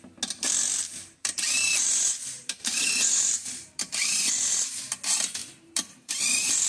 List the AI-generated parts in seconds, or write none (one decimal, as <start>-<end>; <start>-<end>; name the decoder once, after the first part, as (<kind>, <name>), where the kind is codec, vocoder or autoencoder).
1.2-4.8 (vocoder, BigVGAN v2); 5.4-6.1